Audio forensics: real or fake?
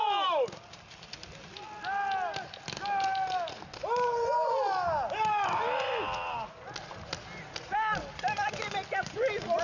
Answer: real